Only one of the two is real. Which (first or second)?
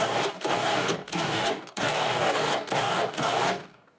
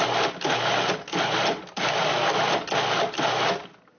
second